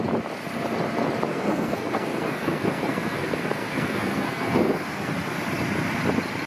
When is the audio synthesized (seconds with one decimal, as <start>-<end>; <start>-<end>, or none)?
1.3-5.1

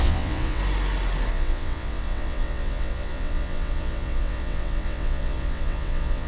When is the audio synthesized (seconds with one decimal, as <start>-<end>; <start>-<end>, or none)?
0.0-0.6; 1.3-6.3

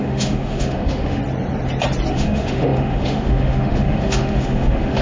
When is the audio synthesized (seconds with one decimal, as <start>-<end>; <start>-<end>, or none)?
0.0-1.2; 2.1-5.0

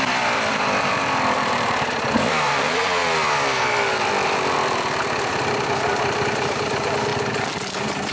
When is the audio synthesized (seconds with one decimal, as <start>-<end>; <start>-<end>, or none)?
0.0-3.0; 4.4-7.1

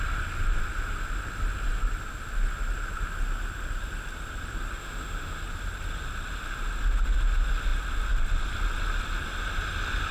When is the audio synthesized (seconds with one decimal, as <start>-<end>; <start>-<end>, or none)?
4.8-5.4